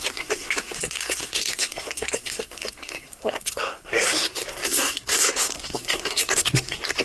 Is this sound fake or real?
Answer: fake